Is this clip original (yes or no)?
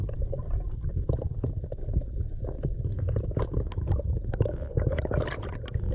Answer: yes